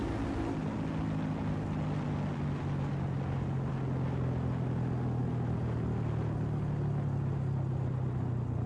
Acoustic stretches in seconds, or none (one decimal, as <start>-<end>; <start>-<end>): 0.0-8.7